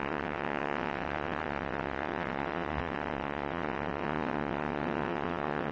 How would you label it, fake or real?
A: fake